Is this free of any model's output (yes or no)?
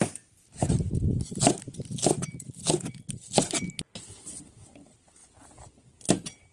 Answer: yes